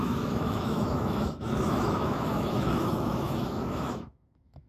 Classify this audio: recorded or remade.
remade